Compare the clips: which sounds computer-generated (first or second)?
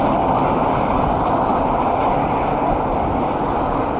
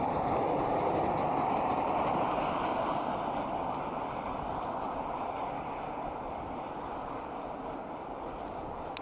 second